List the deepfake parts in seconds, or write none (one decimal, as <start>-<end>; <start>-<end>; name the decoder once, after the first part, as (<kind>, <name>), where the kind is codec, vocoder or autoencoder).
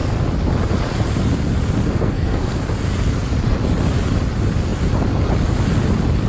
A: 1.8-2.6 (codec, SNAC)